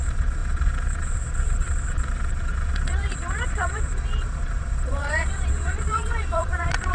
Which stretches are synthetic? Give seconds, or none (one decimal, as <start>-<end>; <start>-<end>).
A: 0.0-6.9